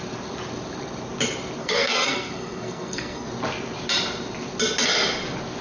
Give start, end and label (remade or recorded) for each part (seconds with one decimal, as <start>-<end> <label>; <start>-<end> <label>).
0.0-1.6 recorded; 1.6-3.3 remade; 3.3-5.6 recorded